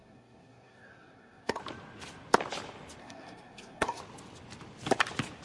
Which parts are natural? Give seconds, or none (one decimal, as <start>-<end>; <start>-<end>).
1.6-3.0; 4.0-5.4